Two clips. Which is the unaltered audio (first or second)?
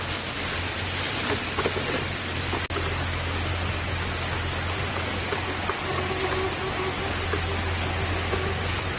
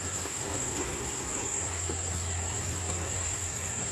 first